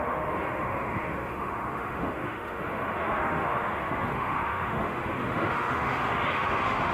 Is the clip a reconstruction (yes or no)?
yes